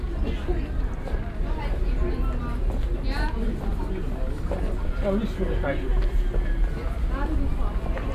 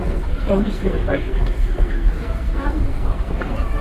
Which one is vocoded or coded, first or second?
second